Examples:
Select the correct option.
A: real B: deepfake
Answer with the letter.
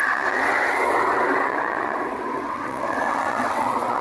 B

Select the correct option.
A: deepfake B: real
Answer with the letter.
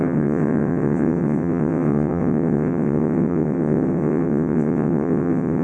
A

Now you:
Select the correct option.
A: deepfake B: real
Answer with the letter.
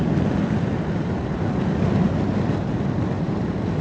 B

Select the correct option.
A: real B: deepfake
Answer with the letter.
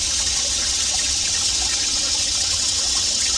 B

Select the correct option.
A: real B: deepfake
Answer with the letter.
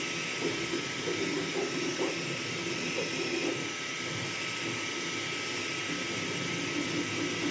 A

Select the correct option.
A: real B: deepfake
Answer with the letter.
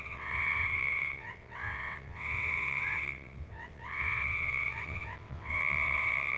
B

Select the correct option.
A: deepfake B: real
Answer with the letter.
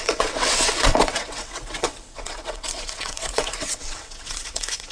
A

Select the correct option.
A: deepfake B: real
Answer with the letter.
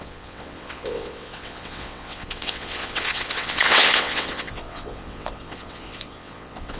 A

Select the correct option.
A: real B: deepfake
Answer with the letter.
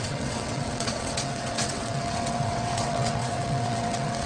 B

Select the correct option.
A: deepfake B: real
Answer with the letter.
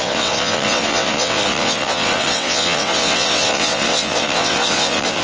A